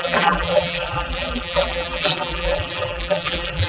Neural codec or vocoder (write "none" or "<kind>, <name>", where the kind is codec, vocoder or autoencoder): vocoder, BigVGAN v2